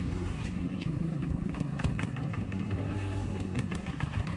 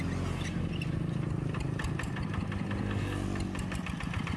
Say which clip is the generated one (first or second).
first